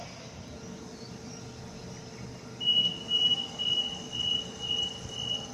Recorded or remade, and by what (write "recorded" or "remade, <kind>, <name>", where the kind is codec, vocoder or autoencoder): recorded